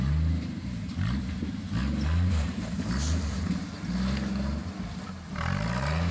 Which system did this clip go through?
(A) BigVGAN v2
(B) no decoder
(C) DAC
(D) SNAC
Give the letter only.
B